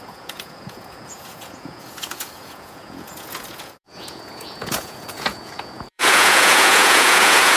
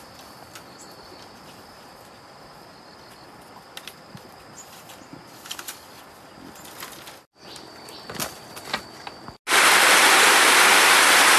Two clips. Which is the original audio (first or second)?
second